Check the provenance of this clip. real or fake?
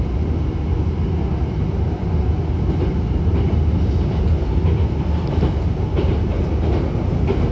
real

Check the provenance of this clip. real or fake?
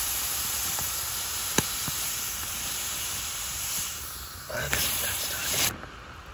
real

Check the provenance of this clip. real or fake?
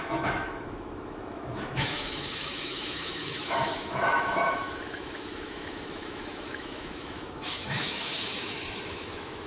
fake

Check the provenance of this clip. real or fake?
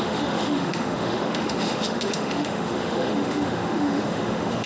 fake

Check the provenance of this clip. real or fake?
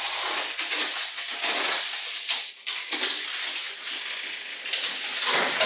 real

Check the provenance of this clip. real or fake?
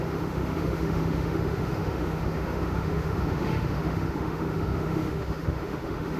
fake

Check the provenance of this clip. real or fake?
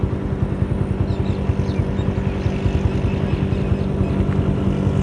real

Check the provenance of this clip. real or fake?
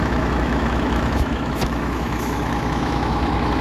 fake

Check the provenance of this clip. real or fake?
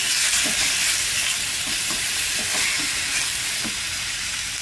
real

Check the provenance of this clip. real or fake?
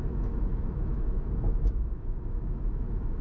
fake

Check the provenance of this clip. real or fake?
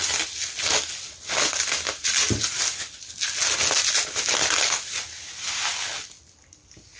real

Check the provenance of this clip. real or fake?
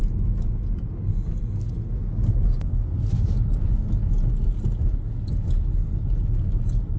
real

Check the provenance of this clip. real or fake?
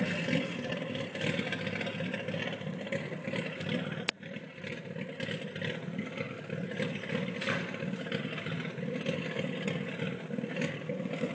real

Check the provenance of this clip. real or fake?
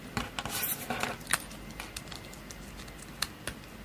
real